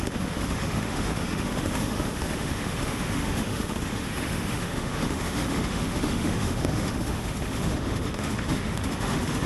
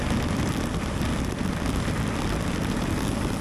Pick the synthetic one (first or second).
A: first